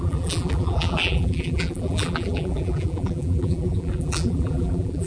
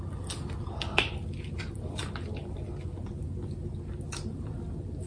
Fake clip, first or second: first